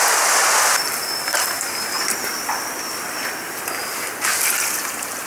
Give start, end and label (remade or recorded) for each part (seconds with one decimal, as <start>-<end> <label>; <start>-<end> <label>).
0.0-1.3 recorded; 1.3-2.2 remade; 2.2-5.3 recorded